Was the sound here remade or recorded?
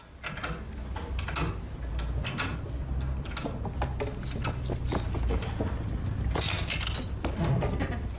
recorded